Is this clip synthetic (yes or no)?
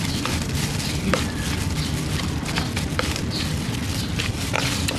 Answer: no